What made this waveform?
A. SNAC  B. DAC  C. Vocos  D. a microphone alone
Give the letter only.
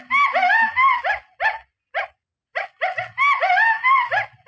D